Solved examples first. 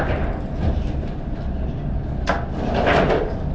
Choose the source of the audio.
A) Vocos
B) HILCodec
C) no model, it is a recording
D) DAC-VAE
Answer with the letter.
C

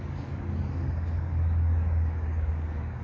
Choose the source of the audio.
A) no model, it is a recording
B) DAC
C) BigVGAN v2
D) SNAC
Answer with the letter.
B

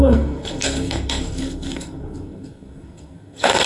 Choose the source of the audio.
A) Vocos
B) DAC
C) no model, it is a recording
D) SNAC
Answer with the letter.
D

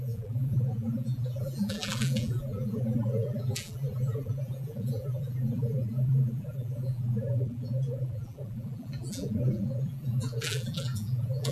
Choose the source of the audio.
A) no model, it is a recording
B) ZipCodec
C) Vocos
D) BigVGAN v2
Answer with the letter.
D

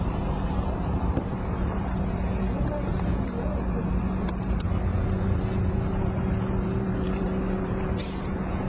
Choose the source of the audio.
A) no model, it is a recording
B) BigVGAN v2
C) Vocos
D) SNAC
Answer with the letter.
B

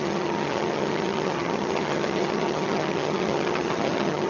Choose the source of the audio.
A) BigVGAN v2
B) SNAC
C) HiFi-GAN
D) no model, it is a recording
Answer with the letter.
C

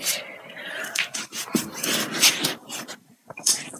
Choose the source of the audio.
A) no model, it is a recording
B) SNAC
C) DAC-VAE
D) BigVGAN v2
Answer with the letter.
D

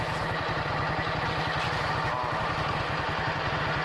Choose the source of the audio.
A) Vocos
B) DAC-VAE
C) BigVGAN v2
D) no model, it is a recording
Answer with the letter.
D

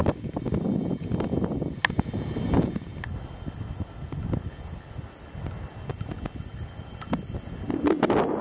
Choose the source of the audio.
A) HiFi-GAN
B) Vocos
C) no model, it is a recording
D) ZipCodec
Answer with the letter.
C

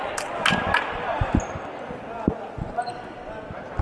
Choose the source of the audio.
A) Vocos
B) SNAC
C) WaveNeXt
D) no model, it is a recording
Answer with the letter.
D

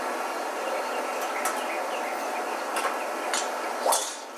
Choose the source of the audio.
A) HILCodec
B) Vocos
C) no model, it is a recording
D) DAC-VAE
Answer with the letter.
C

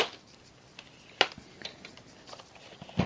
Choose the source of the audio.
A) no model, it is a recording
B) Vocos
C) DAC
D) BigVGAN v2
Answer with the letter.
A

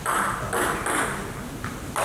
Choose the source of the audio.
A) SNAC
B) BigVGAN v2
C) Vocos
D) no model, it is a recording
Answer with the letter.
D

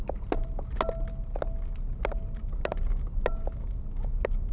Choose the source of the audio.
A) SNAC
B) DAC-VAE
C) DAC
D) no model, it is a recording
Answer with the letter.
D